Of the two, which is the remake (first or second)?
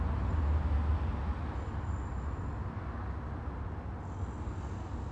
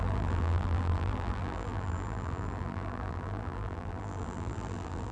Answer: second